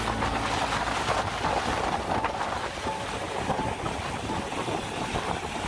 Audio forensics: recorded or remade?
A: recorded